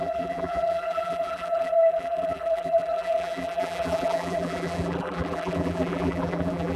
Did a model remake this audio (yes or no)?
yes